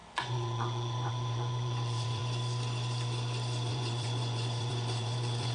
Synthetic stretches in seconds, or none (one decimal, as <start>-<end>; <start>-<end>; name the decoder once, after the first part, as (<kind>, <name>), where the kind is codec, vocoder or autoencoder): 0.0-2.2 (vocoder, Vocos); 3.7-5.5